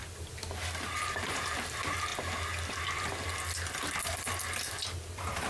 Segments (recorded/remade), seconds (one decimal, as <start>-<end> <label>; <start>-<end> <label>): 0.0-1.3 recorded; 1.3-2.1 remade; 2.1-5.5 recorded